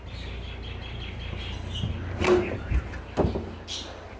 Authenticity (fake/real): real